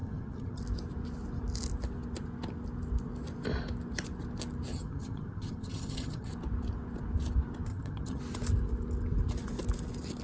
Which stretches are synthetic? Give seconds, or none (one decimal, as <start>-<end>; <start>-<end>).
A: 0.0-0.6; 4.7-6.3; 7.7-8.2